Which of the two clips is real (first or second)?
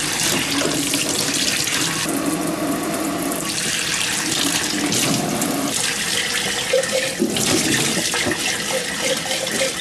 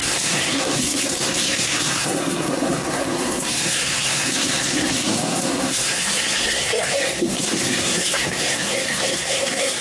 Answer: first